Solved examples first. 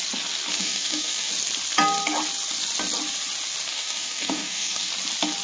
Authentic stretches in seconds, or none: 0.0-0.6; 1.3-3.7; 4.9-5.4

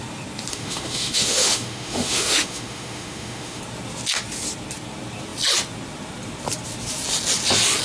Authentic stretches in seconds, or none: 0.0-0.5; 3.6-7.8

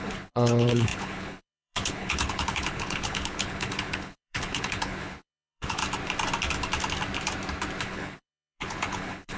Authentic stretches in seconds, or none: 5.8-7.8

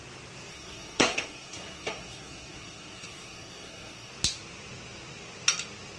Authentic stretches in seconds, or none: 0.0-0.5; 4.1-6.0

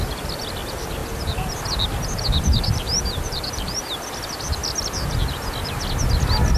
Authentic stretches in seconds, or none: 0.0-1.0; 3.8-6.6

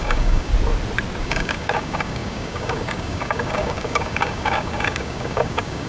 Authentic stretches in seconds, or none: 0.5-1.2

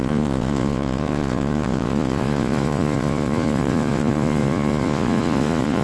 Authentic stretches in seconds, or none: none